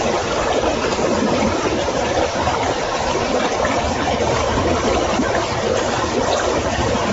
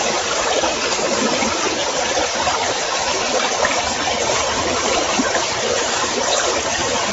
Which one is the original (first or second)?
first